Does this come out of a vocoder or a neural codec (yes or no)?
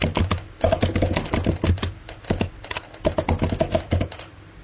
no